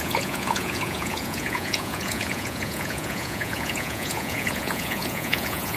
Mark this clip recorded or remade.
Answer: remade